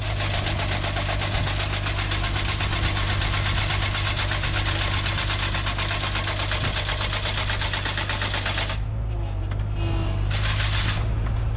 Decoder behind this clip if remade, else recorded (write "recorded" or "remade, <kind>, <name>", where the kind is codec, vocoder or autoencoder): recorded